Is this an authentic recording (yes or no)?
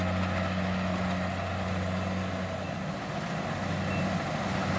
yes